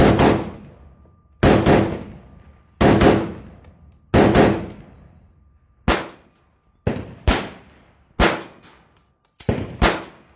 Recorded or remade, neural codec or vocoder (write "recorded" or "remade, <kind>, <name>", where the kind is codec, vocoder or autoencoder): recorded